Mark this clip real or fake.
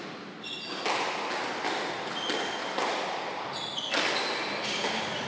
real